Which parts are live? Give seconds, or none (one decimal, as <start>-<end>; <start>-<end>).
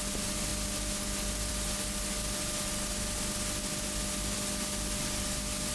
0.0-5.7